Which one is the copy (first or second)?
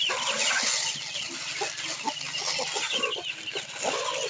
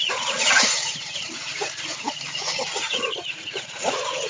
second